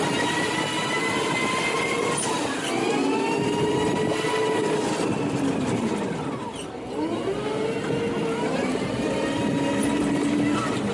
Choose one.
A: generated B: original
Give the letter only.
B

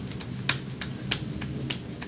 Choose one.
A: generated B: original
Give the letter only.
B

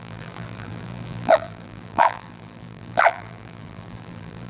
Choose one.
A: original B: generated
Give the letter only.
B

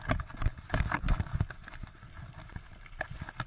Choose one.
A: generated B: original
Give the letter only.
B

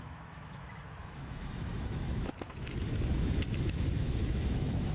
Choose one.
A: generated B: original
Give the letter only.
A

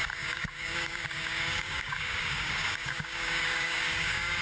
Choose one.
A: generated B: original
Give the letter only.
A